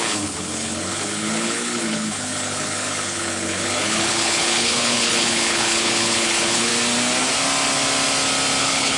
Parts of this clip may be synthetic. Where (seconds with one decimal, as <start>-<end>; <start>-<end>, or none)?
0.0-6.7; 8.6-9.0